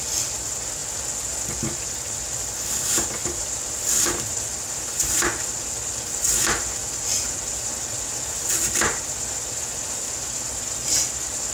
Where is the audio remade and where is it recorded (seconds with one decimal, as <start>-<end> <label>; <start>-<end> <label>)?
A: 0.0-3.2 recorded; 3.2-5.2 remade; 5.2-11.5 recorded